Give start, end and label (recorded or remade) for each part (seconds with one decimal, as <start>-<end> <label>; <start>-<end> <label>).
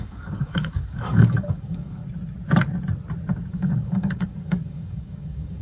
0.0-2.0 remade; 2.0-3.5 recorded; 3.5-5.6 remade